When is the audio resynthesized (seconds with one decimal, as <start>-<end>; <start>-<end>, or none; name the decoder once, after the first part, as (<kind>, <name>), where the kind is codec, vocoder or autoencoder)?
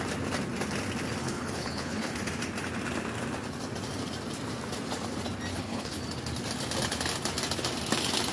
1.2-2.1 (codec, HILCodec); 5.5-6.0